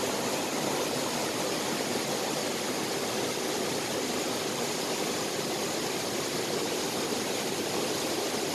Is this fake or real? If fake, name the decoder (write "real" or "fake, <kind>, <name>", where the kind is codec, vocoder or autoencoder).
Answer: real